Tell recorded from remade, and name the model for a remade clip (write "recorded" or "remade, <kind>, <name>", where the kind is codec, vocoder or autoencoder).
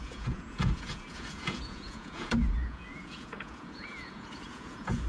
remade, vocoder, Vocos